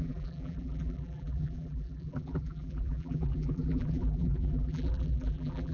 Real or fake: fake